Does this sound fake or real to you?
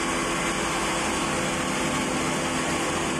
real